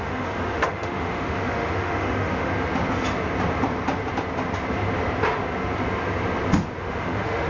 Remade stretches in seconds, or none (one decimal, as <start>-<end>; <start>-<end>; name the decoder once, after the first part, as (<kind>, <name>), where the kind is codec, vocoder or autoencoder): 0.0-2.5 (autoencoder, DAC-VAE); 6.8-7.5